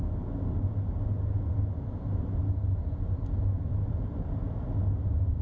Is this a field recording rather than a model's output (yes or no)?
yes